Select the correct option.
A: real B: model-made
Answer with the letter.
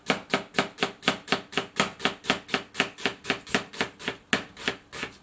A